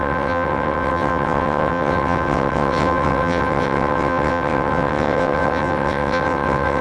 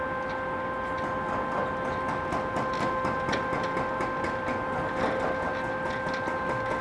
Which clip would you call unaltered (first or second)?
second